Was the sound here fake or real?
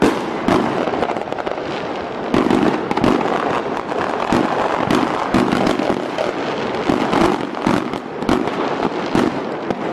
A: real